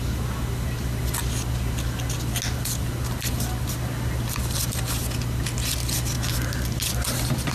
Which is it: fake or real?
real